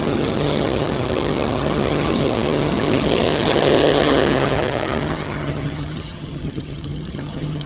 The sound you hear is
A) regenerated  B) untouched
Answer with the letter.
A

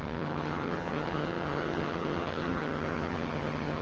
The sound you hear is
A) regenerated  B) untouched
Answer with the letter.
A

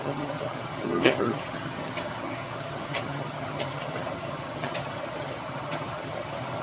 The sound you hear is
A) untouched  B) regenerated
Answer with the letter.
B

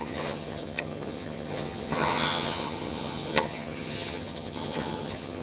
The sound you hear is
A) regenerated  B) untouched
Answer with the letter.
A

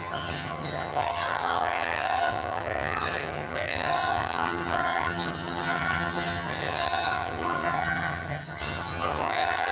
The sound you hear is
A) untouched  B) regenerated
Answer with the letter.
B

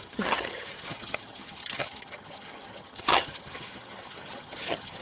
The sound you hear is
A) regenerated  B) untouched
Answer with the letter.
A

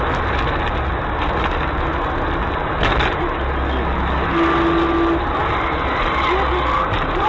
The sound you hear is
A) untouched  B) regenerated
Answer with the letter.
A